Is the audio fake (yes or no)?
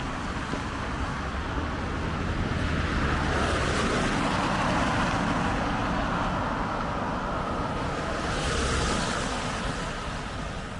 no